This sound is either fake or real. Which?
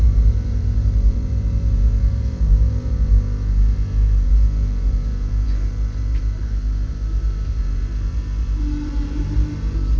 fake